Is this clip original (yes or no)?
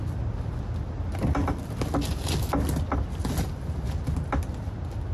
yes